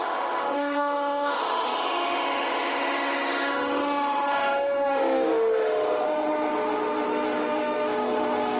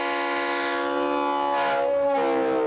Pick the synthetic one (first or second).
first